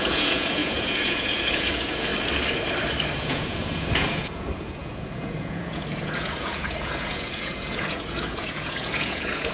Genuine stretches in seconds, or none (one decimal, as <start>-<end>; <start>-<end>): 2.1-3.2